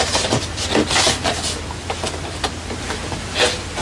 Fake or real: real